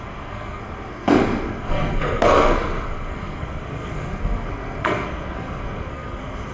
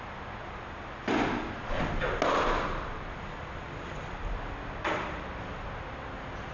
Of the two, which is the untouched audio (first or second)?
second